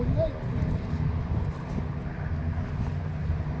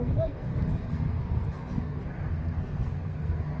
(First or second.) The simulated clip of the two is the second